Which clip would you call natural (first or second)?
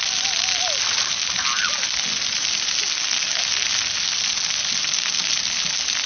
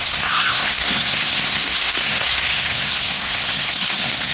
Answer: first